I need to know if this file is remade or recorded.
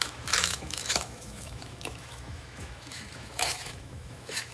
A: remade